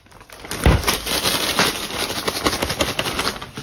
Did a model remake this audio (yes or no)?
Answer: no